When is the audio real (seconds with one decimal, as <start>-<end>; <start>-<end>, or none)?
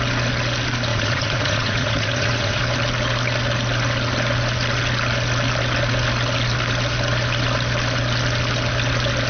0.0-0.9; 2.6-9.3